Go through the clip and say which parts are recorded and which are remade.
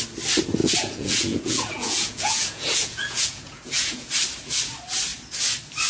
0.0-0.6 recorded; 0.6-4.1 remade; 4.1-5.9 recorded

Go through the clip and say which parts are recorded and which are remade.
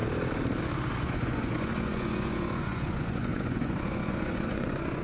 0.0-1.0 recorded; 1.0-5.0 remade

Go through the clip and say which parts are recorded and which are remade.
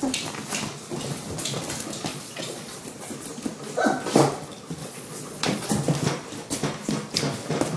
0.0-2.1 recorded; 2.1-2.8 remade; 2.8-4.8 recorded; 4.8-5.7 remade; 5.7-7.8 recorded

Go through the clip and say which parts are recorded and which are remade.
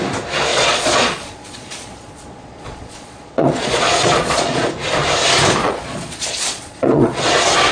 0.0-0.5 recorded; 0.5-4.7 remade; 4.7-5.6 recorded; 5.6-7.3 remade; 7.3-7.7 recorded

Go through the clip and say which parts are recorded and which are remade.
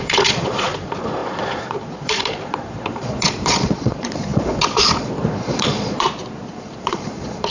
0.0-7.5 remade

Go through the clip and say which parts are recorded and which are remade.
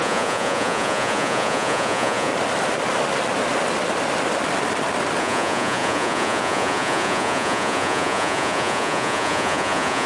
0.0-2.3 remade; 2.3-5.2 recorded; 5.2-10.1 remade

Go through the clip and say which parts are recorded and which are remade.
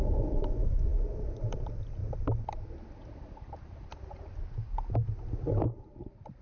0.0-6.4 recorded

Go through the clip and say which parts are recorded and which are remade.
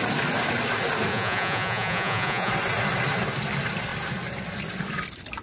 0.0-1.1 recorded; 1.1-2.5 remade; 2.5-5.4 recorded